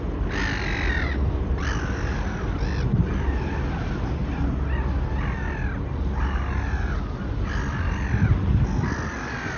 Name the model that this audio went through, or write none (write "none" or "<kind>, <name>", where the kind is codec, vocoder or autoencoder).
none